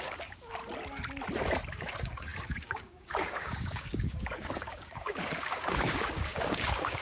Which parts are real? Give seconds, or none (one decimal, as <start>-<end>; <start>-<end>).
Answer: 0.6-1.7